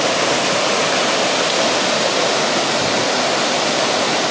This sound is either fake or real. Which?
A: real